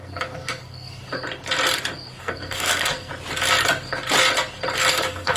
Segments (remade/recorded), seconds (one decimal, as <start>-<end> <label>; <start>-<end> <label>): 0.0-1.0 remade; 1.0-2.2 recorded; 2.2-3.1 remade; 3.1-4.9 recorded; 4.9-5.4 remade